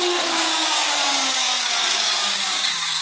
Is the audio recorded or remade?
remade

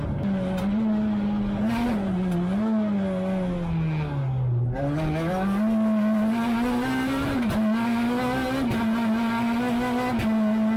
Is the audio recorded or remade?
recorded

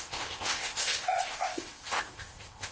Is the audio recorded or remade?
remade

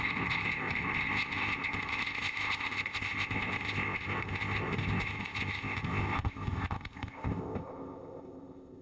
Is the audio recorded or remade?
remade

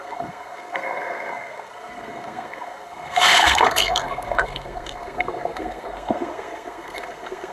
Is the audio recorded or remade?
remade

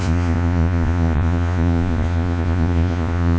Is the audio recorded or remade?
remade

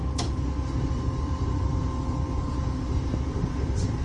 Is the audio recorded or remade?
remade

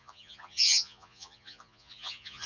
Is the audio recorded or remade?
remade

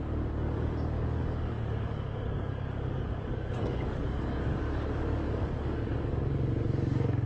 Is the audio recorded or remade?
remade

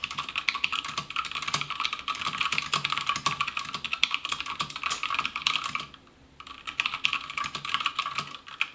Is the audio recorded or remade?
recorded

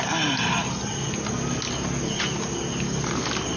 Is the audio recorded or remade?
recorded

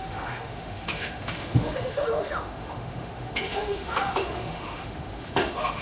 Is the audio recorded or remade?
remade